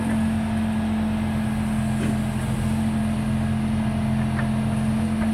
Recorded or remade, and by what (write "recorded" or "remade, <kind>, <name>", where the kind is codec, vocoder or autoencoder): recorded